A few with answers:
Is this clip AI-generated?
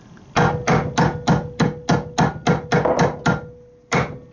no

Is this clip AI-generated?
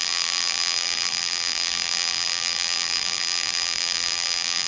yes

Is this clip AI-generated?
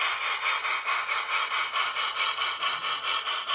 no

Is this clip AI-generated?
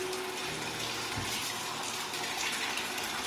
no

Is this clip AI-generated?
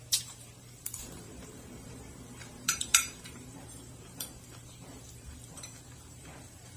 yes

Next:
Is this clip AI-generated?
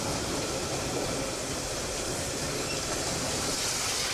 no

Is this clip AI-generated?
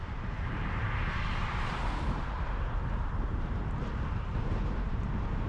yes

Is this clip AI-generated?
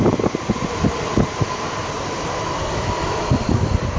yes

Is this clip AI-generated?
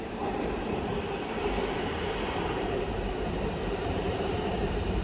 yes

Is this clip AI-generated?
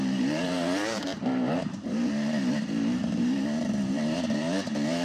yes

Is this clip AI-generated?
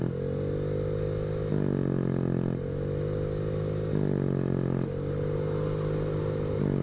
no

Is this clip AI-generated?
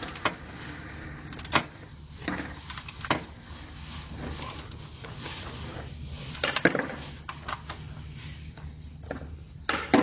no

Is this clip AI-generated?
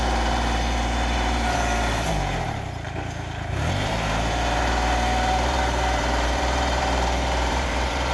yes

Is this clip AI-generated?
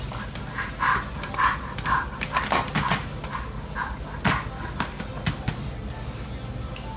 no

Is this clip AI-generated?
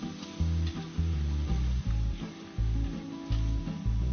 no